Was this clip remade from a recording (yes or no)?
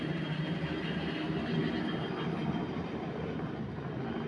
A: no